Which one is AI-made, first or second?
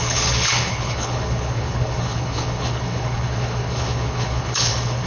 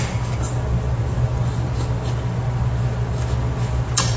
first